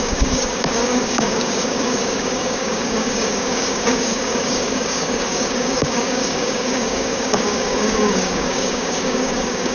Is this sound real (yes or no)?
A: no